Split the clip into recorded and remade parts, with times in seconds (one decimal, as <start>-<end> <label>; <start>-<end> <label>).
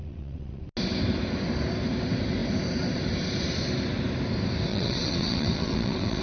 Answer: 0.0-0.6 remade; 0.6-4.7 recorded; 4.7-6.2 remade